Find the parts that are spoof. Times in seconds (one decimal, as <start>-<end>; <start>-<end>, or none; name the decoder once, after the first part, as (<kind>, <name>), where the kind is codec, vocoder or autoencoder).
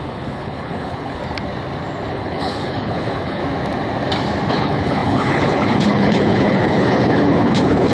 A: 0.0-1.2 (codec, HILCodec); 2.1-3.4; 4.5-7.9